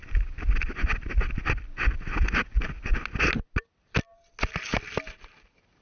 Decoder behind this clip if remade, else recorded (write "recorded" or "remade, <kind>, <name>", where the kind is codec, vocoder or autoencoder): recorded